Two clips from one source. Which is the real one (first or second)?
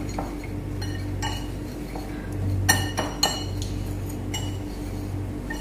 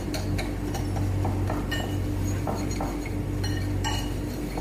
first